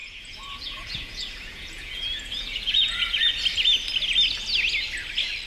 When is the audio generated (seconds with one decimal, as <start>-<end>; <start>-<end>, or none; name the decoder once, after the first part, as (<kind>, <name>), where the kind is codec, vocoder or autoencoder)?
0.0-3.3 (vocoder, Vocos)